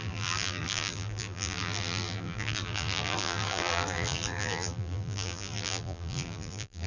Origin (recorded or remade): remade